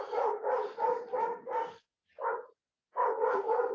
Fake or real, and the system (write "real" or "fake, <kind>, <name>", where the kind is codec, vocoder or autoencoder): real